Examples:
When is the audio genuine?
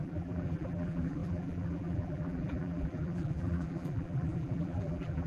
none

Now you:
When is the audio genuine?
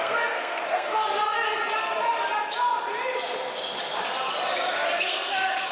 1.6-5.0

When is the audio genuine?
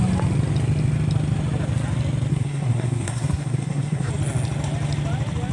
0.0-2.3; 4.1-5.5